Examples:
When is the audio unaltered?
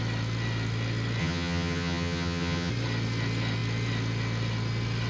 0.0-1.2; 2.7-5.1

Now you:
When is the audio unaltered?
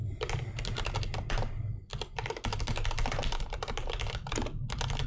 0.0-5.1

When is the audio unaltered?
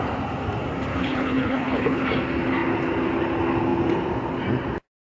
0.0-1.0; 2.0-5.1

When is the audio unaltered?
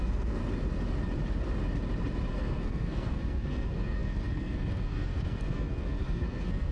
0.4-2.3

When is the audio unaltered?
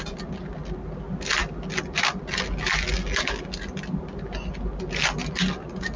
0.0-6.0